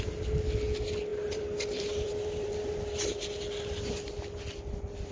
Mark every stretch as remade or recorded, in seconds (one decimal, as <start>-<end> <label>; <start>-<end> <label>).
0.0-1.1 recorded; 1.1-2.7 remade; 2.7-5.1 recorded